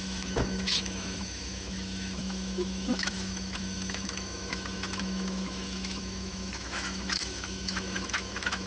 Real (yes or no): no